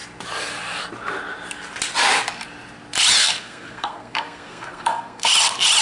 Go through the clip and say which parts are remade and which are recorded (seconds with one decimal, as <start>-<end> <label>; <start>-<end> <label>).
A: 0.0-3.2 recorded; 3.2-5.3 remade; 5.3-5.8 recorded